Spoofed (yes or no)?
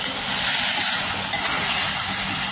no